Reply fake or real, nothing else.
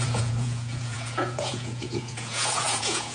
fake